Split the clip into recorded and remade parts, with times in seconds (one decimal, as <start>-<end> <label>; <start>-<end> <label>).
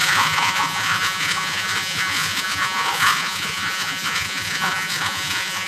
0.0-5.7 remade